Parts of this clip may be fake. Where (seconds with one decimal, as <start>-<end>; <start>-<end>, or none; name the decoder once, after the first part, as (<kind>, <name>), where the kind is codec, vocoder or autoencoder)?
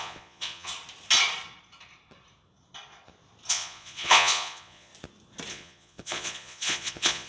0.0-0.7 (vocoder, Vocos); 3.5-4.9; 5.5-7.3